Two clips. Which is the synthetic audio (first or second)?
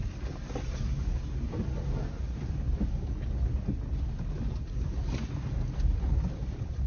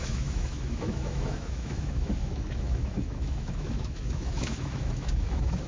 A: second